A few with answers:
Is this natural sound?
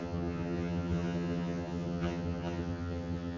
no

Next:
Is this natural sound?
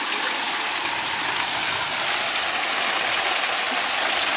yes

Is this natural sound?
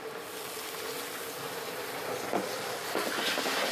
yes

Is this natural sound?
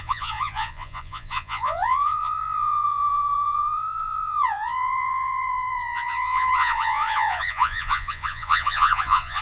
no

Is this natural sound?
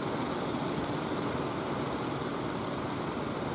yes